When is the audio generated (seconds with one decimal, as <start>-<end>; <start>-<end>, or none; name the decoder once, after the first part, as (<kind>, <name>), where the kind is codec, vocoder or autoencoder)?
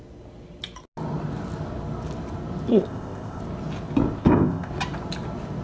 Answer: 2.7-3.4 (codec, ZipCodec); 4.2-4.7